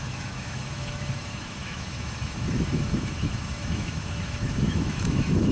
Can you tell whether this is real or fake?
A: fake